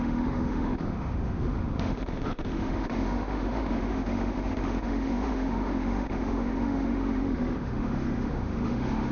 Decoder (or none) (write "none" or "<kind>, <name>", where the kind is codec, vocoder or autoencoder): autoencoder, DAC-VAE